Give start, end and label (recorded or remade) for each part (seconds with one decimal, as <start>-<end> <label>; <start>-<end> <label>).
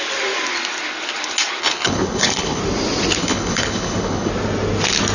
0.0-1.6 recorded; 1.6-2.6 remade; 2.6-3.2 recorded; 3.2-4.3 remade; 4.3-5.1 recorded